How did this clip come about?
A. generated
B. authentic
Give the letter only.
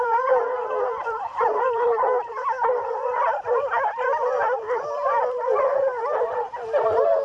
A